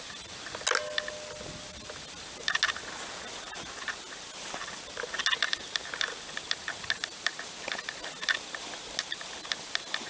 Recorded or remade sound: recorded